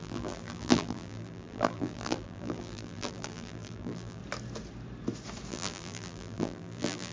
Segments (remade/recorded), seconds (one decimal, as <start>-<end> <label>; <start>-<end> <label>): 0.0-4.2 remade; 4.2-5.5 recorded; 5.5-7.1 remade